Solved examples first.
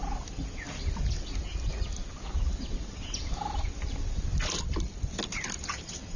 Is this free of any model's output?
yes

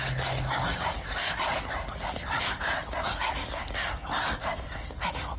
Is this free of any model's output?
yes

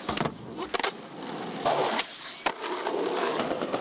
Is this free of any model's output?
yes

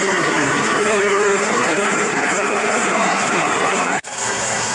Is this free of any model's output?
no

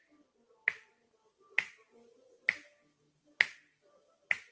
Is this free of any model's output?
yes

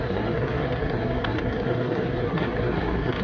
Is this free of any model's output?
no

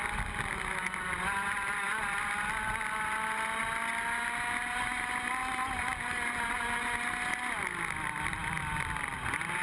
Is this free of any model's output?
yes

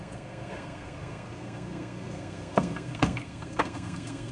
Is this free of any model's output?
no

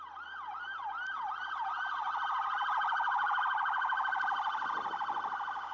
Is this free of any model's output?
yes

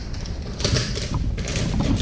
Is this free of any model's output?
no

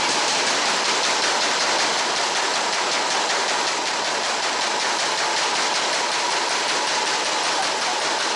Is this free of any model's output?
yes